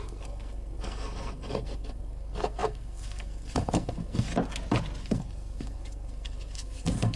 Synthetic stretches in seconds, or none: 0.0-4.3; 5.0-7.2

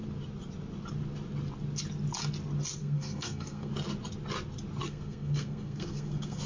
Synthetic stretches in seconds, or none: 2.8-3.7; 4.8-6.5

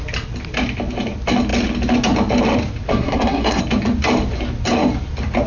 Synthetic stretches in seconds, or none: 2.9-3.6

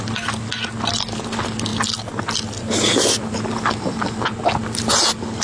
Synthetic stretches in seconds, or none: none

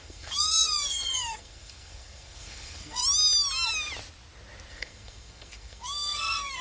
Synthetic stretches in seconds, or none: 0.0-3.0; 4.7-6.6